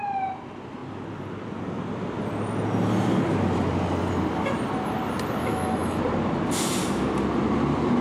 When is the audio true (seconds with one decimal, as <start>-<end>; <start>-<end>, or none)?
0.0-5.4; 6.0-8.0